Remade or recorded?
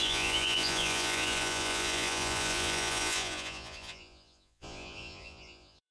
remade